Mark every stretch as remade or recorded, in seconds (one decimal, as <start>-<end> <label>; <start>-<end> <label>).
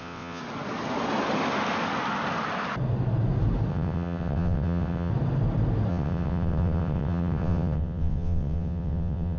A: 0.0-0.4 remade; 0.4-3.7 recorded; 3.7-5.1 remade; 5.1-5.9 recorded; 5.9-9.4 remade